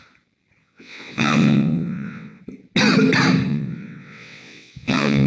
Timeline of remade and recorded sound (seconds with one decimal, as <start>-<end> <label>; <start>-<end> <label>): 0.0-0.6 recorded; 0.6-2.4 remade; 2.4-3.5 recorded; 3.5-5.3 remade